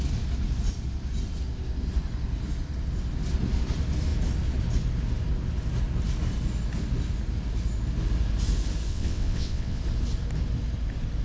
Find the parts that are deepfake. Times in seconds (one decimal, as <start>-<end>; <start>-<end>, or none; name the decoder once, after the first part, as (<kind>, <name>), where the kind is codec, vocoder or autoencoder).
8.9-9.8 (vocoder, WaveNeXt)